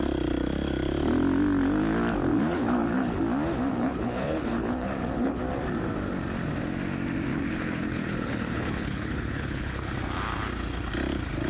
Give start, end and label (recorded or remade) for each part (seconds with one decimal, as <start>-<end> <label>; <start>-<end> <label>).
0.0-2.3 recorded; 2.3-3.2 remade; 3.2-3.7 recorded; 3.7-5.4 remade; 5.4-7.3 recorded; 7.3-9.9 remade; 9.9-11.5 recorded